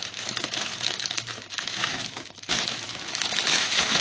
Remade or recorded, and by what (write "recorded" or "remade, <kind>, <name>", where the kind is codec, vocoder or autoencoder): remade, autoencoder, DAC-VAE